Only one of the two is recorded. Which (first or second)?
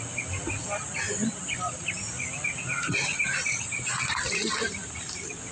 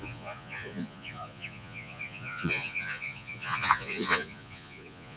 first